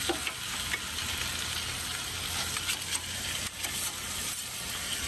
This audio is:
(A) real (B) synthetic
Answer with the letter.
A